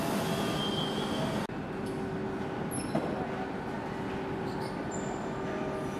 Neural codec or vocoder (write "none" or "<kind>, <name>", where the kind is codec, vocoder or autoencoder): none